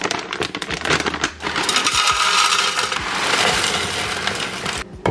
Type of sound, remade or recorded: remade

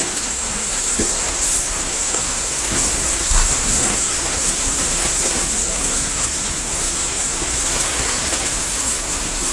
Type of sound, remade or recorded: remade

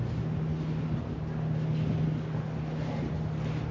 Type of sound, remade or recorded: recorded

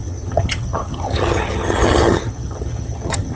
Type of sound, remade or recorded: remade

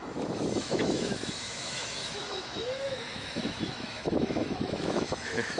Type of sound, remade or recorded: remade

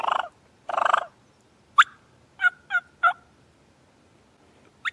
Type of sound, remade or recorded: recorded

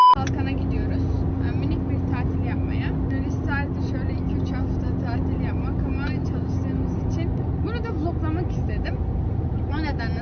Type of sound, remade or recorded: recorded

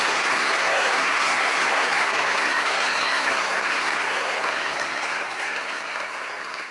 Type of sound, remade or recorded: remade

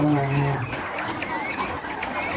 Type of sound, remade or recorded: recorded